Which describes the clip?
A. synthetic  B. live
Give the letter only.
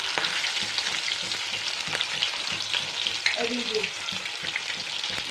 B